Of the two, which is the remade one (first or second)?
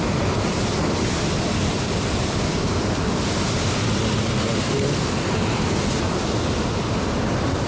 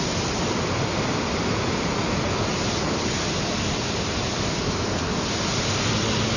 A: first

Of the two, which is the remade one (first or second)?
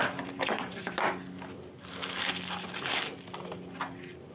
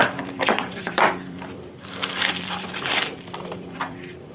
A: second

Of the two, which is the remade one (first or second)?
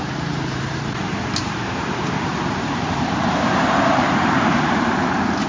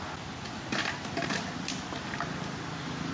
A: first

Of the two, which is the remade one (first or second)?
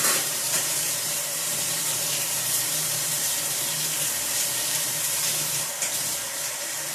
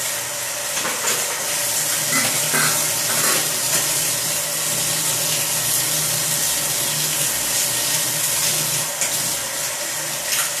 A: first